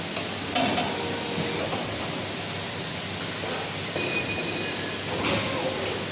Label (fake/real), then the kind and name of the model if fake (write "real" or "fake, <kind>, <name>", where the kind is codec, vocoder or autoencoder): real